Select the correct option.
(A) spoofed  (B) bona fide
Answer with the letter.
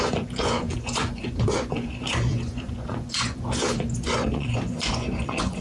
A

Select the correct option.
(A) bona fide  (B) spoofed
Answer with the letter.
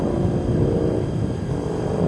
A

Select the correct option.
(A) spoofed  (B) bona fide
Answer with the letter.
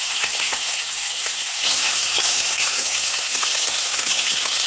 A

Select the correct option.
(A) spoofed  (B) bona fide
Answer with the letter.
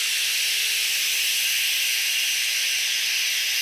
B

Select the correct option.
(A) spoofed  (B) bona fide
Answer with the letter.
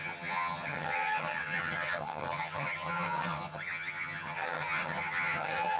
A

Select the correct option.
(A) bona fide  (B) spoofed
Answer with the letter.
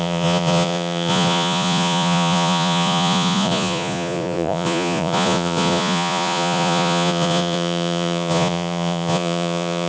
B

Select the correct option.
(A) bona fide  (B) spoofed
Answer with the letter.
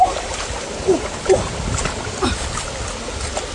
A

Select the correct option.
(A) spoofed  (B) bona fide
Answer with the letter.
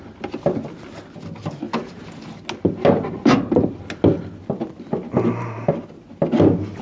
B